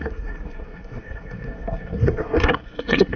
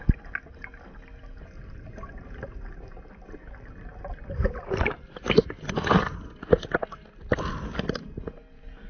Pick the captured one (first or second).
second